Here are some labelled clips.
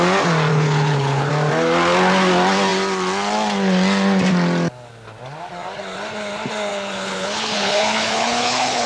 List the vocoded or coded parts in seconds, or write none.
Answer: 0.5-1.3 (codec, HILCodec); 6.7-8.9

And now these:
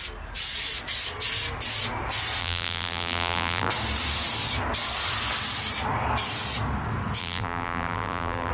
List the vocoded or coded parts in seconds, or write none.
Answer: 2.4-3.7 (vocoder, BigVGAN v2); 7.2-8.5

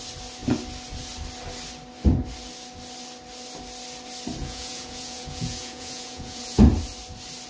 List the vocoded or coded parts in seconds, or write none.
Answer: 4.4-6.6 (vocoder, Vocos)

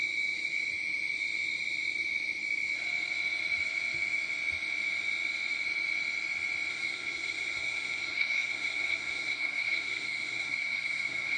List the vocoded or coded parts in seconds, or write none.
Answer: 6.7-11.4 (codec, SNAC)

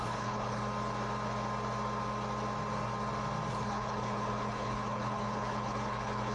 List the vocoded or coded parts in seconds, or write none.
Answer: 0.0-0.6 (codec, HILCodec); 3.5-6.3